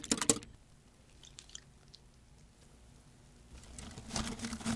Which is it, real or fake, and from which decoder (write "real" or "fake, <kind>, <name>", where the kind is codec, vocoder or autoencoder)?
real